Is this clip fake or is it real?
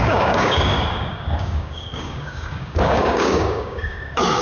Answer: fake